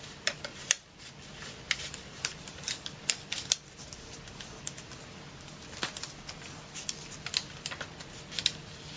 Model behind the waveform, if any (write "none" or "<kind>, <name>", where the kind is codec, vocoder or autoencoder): vocoder, BigVGAN v2